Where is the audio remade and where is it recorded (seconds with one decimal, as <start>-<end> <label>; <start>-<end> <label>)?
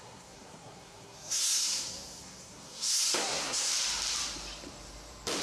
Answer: 0.0-3.7 remade; 3.7-5.4 recorded